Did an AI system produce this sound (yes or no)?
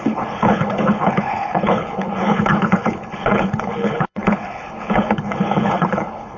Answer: yes